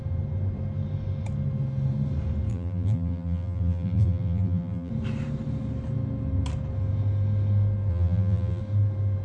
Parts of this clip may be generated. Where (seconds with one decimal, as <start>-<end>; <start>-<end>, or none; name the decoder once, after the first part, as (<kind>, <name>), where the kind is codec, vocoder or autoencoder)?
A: 2.5-4.9 (vocoder, BigVGAN v2); 7.9-8.6